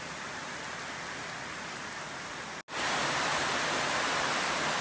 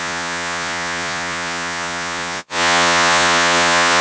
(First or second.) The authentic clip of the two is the first